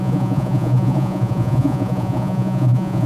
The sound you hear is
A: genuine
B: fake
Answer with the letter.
B